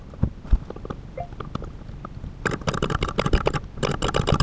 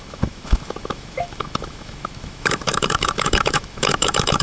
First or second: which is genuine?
first